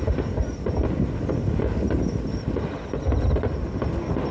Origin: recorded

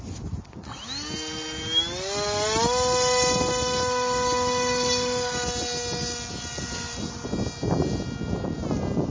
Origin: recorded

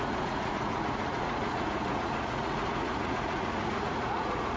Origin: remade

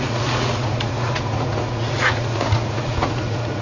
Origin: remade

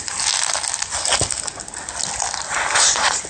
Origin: recorded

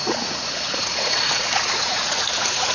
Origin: remade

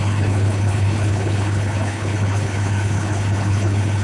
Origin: remade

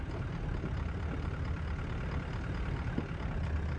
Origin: recorded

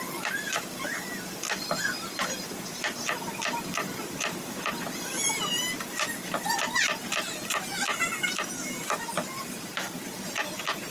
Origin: recorded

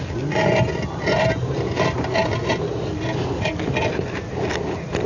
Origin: recorded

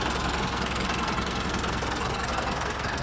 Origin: remade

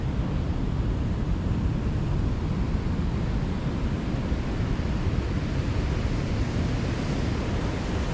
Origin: recorded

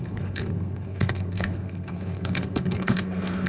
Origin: remade